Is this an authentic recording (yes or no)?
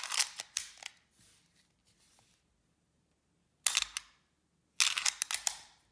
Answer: yes